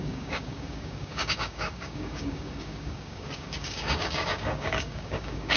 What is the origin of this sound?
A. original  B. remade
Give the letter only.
B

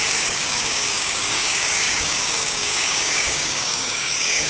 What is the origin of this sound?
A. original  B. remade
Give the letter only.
B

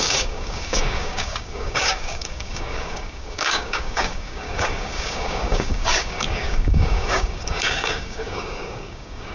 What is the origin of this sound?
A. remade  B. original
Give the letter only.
A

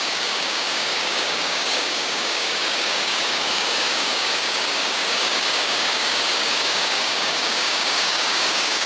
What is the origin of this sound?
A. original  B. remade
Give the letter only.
B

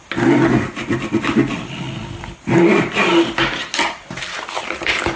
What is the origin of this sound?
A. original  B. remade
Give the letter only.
A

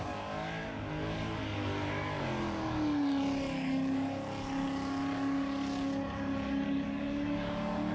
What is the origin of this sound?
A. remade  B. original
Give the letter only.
A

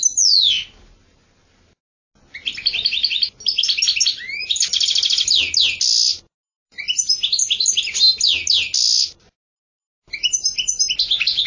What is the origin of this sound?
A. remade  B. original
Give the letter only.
B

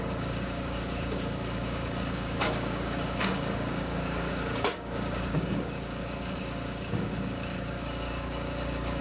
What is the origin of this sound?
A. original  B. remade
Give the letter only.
B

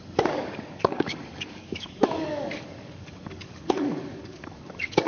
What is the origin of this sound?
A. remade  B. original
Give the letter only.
A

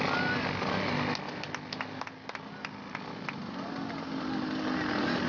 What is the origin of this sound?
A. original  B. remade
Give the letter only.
A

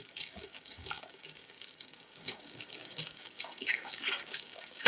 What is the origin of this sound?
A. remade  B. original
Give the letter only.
A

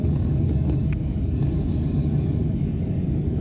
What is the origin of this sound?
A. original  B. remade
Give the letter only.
B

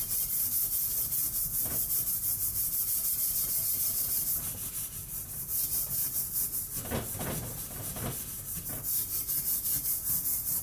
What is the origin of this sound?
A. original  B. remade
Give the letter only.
A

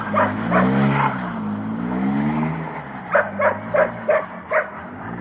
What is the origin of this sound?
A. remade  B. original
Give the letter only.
B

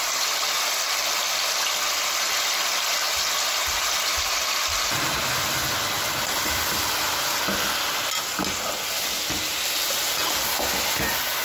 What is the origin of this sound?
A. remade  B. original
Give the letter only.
B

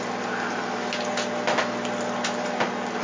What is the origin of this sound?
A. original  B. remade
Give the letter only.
A